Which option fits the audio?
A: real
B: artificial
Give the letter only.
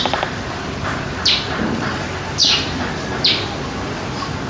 B